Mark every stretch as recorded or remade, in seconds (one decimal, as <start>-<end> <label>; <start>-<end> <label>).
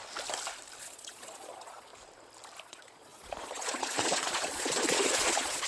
0.0-0.8 recorded; 0.8-1.9 remade; 1.9-2.6 recorded; 2.6-5.7 remade